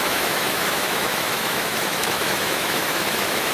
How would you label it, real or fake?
fake